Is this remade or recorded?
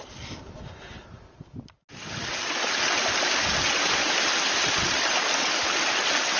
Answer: recorded